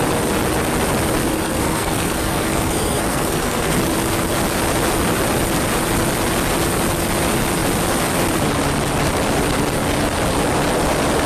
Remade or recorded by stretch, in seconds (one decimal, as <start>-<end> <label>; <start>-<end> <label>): 0.0-1.3 recorded; 1.3-3.7 remade; 3.7-11.3 recorded